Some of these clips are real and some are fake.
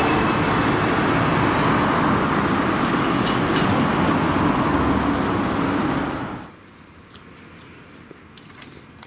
real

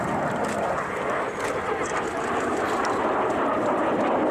real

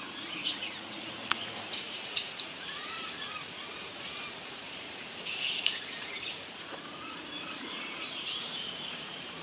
fake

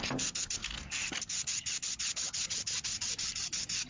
real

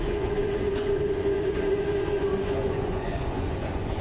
fake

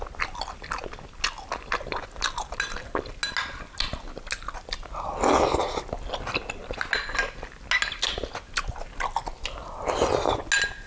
real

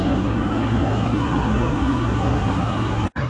fake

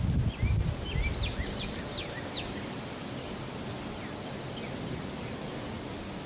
real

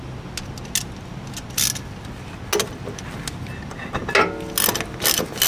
real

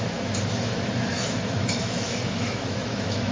fake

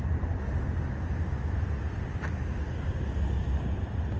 real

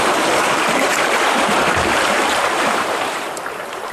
fake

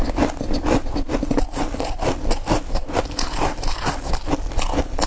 real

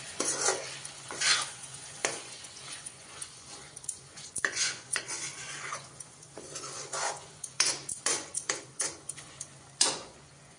fake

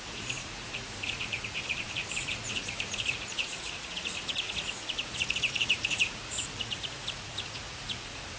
fake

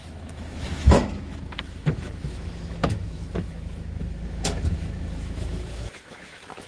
fake